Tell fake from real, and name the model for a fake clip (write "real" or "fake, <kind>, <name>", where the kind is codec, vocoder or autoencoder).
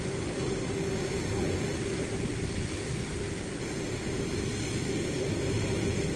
real